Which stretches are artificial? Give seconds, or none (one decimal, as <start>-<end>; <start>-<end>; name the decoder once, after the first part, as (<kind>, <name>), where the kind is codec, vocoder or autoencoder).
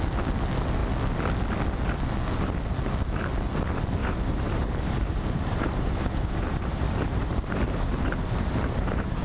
4.0-9.2 (vocoder, BigVGAN v2)